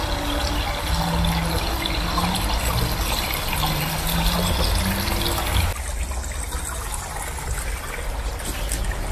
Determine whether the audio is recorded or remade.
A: recorded